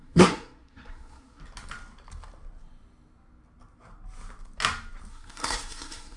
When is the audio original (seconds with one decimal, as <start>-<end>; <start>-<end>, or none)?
1.4-5.1